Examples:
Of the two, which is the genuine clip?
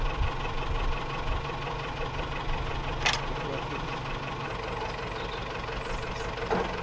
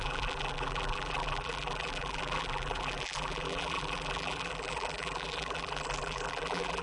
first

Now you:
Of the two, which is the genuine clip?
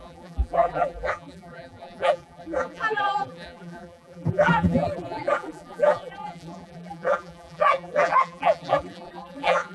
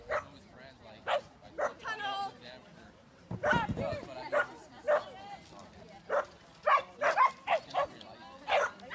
second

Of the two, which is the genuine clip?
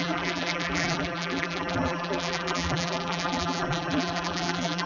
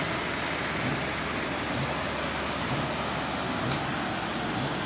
second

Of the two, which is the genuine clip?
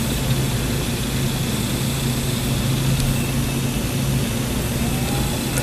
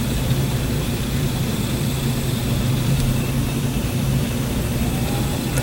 first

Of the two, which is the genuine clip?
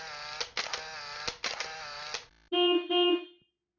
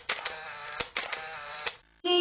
first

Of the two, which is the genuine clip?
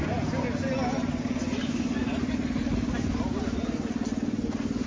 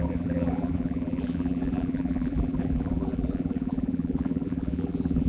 first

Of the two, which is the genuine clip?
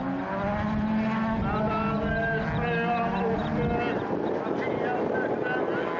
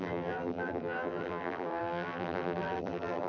first